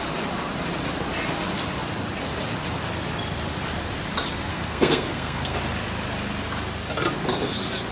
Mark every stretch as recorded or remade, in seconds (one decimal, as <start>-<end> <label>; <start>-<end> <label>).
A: 0.0-4.5 recorded; 4.5-5.6 remade; 5.6-7.9 recorded